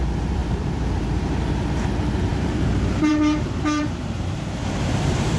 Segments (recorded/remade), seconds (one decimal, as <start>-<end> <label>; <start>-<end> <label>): 0.0-5.4 remade